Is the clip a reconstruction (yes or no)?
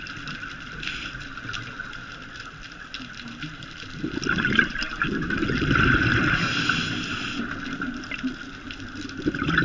no